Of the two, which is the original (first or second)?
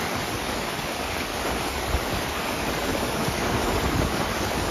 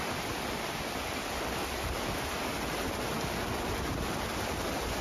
second